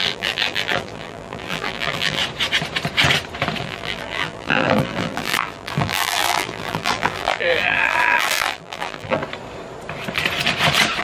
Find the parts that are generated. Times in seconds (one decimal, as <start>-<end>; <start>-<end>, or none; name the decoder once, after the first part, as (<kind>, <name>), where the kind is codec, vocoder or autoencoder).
0.0-2.2 (vocoder, BigVGAN v2); 3.6-9.2